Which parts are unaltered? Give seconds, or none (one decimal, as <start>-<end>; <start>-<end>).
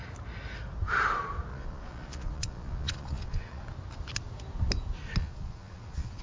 0.0-1.5; 3.6-5.2